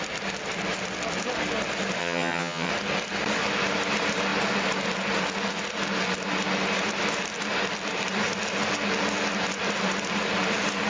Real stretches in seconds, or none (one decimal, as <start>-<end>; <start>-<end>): 0.0-2.0; 2.7-10.9